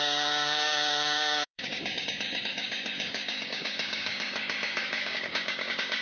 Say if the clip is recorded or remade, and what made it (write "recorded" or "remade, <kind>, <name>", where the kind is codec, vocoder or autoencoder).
remade, codec, DAC